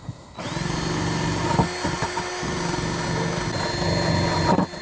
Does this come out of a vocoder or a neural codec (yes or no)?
no